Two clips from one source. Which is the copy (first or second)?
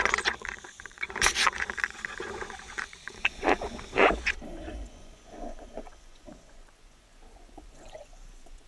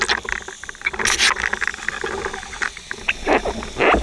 first